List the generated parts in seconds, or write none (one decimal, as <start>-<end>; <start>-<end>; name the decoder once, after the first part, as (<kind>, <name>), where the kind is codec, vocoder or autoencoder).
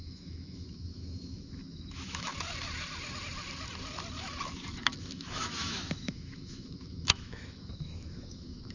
0.0-2.3 (autoencoder, DAC-VAE); 5.0-8.7